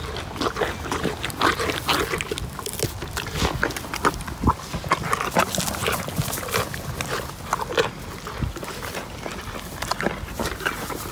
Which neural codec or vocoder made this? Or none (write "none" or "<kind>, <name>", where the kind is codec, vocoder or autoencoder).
none